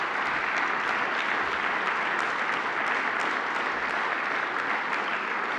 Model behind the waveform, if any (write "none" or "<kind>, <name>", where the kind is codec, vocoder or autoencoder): none